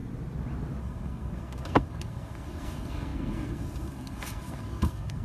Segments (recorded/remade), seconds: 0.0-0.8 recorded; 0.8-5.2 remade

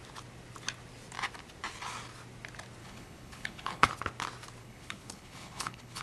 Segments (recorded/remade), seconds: 0.0-2.8 recorded; 2.8-3.9 remade; 3.9-4.6 recorded; 4.6-6.0 remade

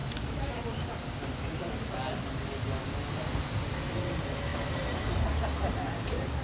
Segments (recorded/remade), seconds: 0.0-6.4 recorded

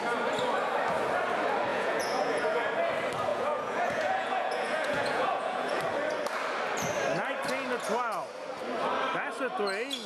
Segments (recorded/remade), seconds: 0.0-1.7 recorded; 1.7-2.7 remade; 2.7-3.3 recorded; 3.3-5.8 remade; 5.8-10.1 recorded

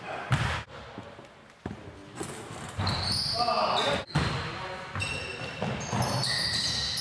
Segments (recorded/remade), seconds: 0.0-7.0 recorded

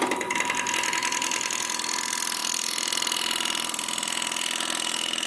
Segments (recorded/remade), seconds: 0.0-5.3 recorded

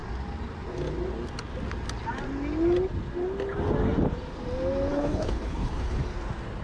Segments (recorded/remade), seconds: 0.0-4.9 recorded; 4.9-6.0 remade; 6.0-6.6 recorded